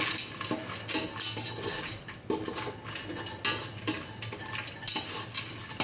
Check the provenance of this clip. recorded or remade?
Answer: recorded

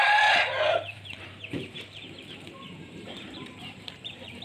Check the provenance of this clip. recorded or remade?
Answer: remade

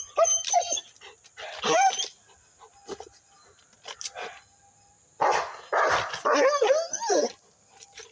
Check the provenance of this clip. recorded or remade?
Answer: recorded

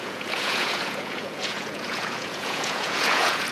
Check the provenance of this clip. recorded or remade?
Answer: remade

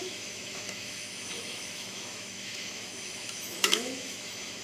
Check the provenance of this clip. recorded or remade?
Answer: remade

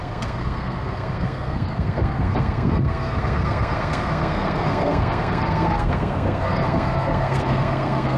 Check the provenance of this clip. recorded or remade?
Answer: remade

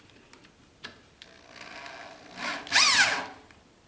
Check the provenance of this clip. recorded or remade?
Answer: recorded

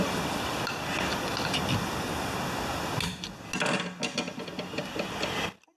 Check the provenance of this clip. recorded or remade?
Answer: recorded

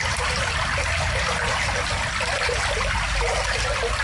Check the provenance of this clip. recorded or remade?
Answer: recorded